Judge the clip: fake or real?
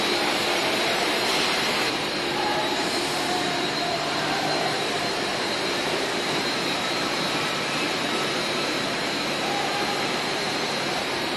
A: fake